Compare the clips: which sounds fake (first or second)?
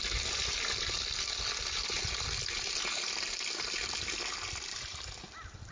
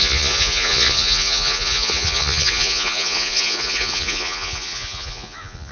second